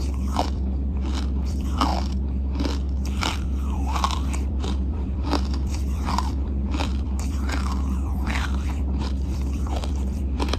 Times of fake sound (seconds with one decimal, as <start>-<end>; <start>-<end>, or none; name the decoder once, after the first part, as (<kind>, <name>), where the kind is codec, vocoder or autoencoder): 0.0-1.9 (vocoder, BigVGAN v2); 3.2-10.6